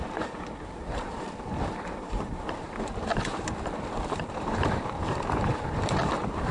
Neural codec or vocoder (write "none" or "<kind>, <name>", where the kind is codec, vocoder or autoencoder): vocoder, BigVGAN v2